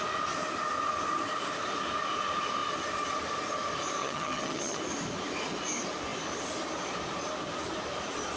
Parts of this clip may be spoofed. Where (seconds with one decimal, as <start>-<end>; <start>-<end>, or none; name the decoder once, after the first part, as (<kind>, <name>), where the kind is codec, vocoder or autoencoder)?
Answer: 4.0-4.8 (vocoder, HiFi-GAN)